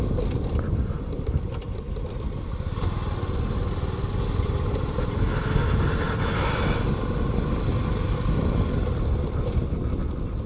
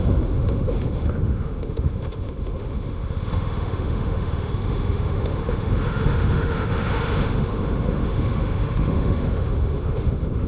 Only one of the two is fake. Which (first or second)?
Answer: second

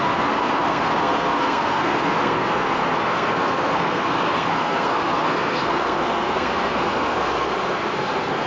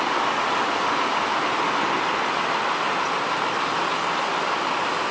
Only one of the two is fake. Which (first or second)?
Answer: first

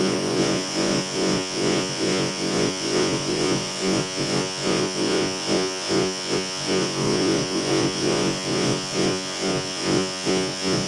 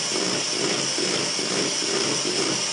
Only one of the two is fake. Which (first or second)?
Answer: first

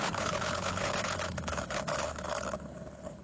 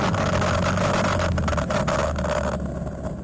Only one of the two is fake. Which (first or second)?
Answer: first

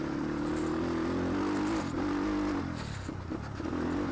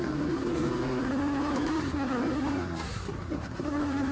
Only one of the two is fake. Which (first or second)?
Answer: second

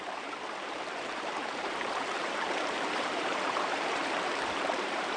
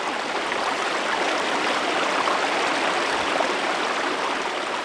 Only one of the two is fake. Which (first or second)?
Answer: first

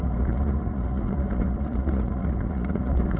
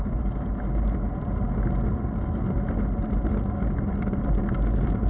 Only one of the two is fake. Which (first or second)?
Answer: first